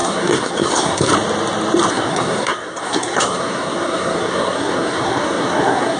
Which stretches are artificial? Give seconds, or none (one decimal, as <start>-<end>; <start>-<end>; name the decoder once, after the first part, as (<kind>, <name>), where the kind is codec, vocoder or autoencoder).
0.0-1.1 (codec, SNAC); 1.9-6.0